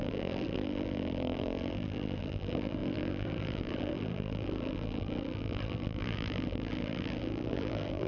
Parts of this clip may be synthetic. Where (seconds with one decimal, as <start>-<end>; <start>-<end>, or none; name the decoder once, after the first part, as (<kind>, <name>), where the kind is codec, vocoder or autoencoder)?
0.0-8.1 (vocoder, BigVGAN v2)